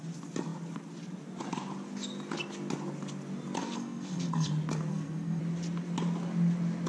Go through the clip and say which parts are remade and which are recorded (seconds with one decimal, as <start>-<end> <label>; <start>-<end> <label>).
0.0-3.6 recorded; 3.6-4.5 remade; 4.5-4.9 recorded; 4.9-5.4 remade; 5.4-6.9 recorded